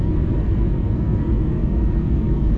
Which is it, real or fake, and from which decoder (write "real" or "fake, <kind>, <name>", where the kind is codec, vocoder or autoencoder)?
fake, codec, SNAC